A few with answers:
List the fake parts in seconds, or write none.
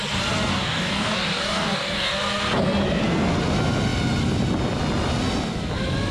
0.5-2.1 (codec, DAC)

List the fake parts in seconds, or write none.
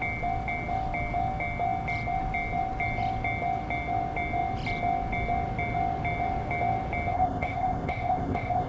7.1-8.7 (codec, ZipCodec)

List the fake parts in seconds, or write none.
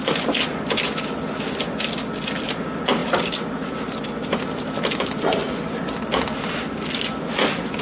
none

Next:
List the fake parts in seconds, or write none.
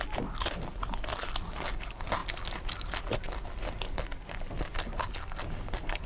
none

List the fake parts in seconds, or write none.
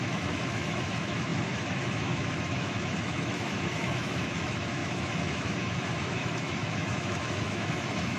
0.0-8.2 (autoencoder, DAC-VAE)